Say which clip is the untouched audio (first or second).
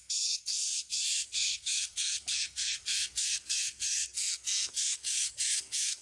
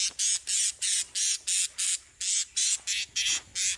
second